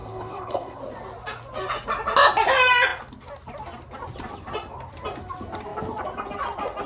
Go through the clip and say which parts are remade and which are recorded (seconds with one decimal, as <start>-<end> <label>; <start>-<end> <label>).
0.0-0.8 remade; 0.8-6.9 recorded